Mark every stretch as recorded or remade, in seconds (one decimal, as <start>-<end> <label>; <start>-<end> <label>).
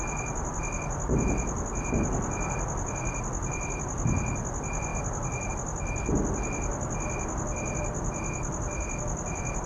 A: 0.0-9.7 recorded